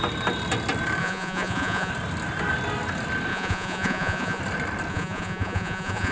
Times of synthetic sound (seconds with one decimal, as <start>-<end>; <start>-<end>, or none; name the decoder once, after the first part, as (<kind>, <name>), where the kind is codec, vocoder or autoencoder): 1.0-1.9 (vocoder, Vocos); 3.3-4.4; 4.9-6.1